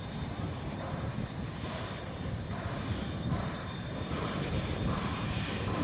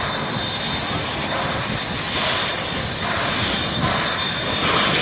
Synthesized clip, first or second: first